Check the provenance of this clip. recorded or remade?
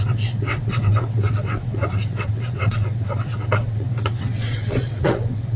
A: remade